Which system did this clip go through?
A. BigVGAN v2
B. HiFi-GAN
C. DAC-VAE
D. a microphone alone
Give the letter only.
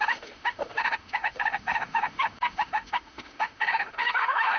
C